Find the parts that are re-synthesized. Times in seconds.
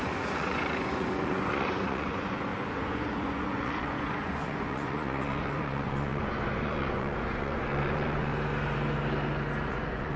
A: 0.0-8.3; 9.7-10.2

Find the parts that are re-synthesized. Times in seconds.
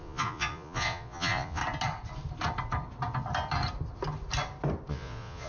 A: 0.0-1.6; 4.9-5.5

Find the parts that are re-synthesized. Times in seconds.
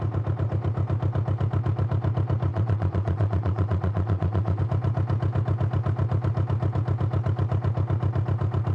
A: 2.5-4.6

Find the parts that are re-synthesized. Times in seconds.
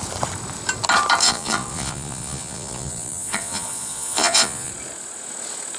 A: 1.2-4.7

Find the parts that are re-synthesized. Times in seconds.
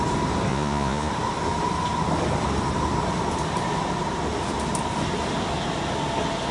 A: 0.5-1.1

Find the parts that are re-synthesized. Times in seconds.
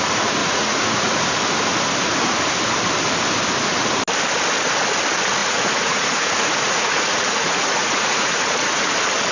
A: 0.4-1.1; 5.4-8.9